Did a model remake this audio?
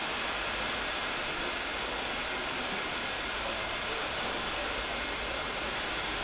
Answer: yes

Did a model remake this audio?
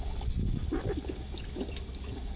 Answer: no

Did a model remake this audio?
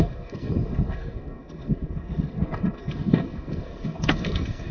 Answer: yes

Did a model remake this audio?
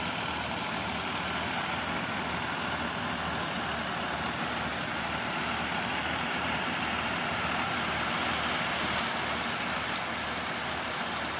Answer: no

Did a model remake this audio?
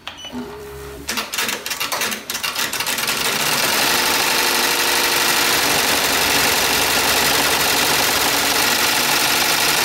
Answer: yes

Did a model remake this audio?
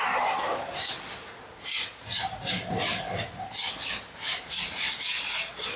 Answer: no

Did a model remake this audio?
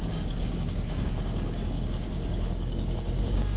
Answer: yes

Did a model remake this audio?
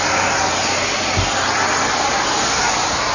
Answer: no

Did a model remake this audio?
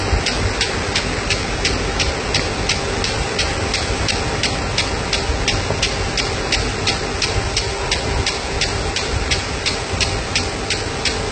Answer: no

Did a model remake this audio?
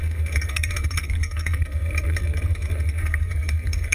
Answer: yes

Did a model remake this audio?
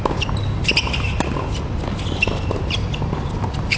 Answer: no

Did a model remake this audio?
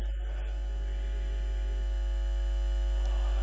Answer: no